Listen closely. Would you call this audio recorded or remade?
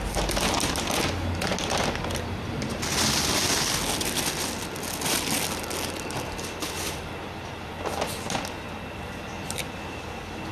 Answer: recorded